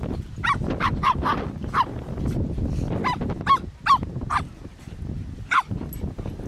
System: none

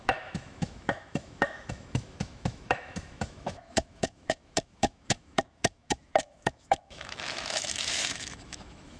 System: autoencoder, DAC-VAE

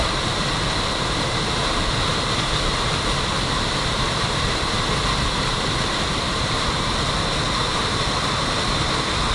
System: vocoder, BigVGAN v2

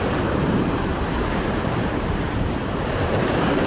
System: vocoder, BigVGAN v2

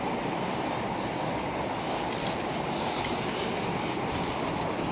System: none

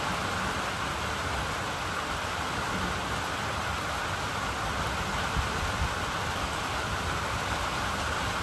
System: none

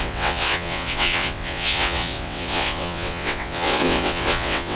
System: vocoder, WaveNeXt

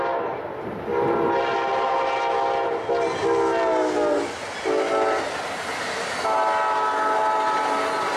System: none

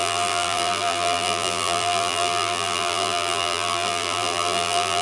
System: vocoder, BigVGAN v2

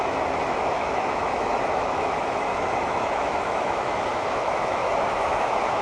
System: autoencoder, DAC-VAE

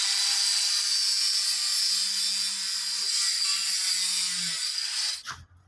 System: none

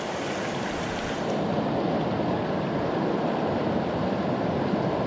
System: none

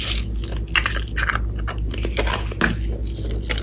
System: none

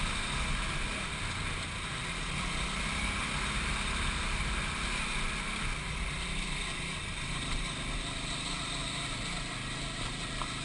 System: none